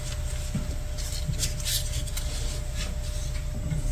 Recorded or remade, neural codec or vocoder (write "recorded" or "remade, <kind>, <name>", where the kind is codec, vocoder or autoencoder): recorded